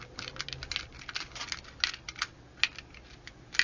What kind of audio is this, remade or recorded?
recorded